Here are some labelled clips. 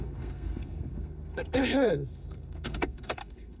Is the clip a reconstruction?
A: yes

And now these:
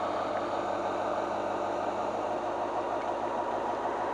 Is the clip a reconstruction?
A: no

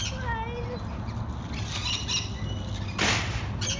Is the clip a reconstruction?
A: no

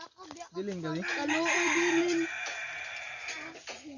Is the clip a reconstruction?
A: no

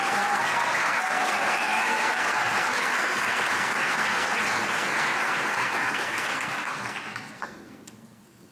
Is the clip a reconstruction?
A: yes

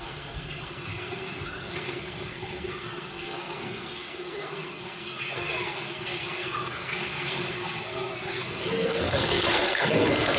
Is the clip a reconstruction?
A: yes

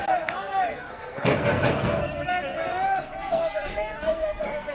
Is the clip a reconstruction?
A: yes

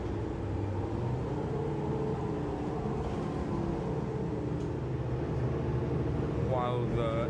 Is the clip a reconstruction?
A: no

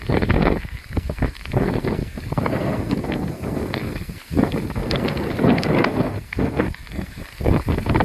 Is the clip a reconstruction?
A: yes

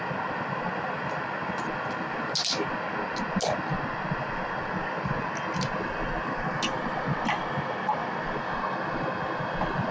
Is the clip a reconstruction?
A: no